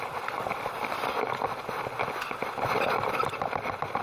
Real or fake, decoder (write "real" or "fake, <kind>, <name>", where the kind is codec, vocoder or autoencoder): real